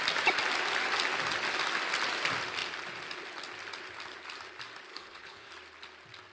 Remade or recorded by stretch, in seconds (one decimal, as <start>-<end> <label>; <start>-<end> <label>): 0.0-4.9 recorded; 4.9-5.5 remade; 5.5-6.3 recorded